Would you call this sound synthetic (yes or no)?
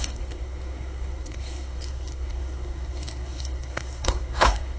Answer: yes